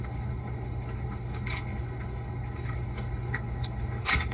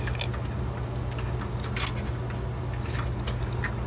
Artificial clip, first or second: first